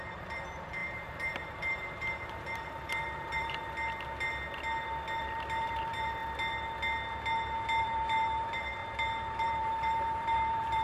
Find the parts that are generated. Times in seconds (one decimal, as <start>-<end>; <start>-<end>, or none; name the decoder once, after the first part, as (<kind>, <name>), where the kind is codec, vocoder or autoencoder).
0.0-3.6 (vocoder, BigVGAN v2); 5.2-6.2; 7.8-8.8; 9.3-10.8